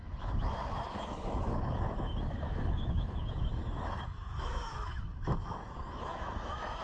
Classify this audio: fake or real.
fake